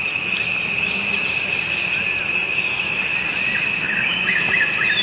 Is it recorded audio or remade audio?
recorded